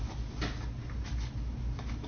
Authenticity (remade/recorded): recorded